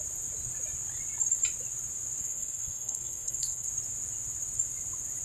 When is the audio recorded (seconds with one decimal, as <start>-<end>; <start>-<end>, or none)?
0.0-2.2; 3.7-5.2